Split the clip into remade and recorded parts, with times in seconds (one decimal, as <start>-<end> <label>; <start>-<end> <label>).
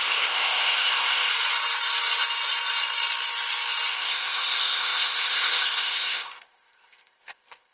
0.0-1.3 remade; 1.3-3.9 recorded; 3.9-7.7 remade